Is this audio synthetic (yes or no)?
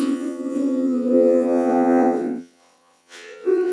yes